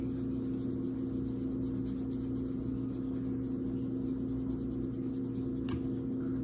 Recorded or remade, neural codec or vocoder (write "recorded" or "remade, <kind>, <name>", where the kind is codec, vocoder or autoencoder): recorded